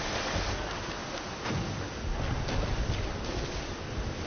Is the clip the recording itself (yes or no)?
yes